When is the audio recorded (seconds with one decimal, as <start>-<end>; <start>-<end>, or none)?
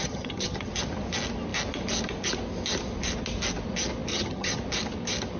0.7-4.1; 4.6-5.4